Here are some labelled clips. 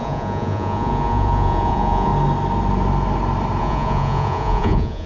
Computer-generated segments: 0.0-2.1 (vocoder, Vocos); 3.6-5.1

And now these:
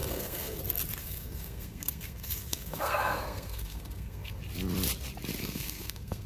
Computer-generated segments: 0.0-0.6 (codec, SNAC); 1.0-4.4; 5.4-6.3

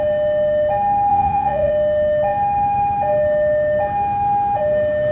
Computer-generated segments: 1.1-1.7 (vocoder, Vocos)

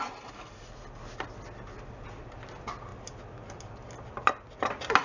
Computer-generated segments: none

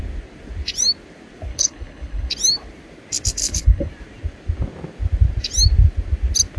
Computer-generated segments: 1.5-2.3 (codec, HILCodec); 3.4-3.9

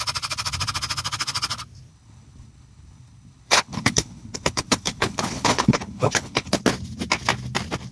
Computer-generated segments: 1.9-6.6 (codec, HILCodec)